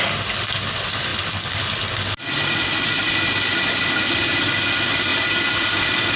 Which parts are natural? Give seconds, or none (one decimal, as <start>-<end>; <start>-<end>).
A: 0.0-6.2